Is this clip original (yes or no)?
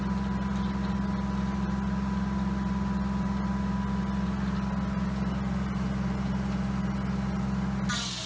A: yes